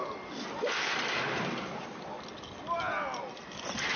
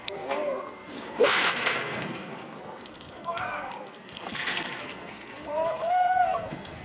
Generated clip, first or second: second